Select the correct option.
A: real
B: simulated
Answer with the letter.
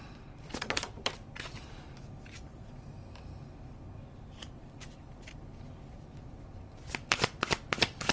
B